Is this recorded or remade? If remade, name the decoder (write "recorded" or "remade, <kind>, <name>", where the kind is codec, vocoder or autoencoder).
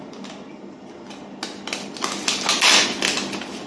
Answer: recorded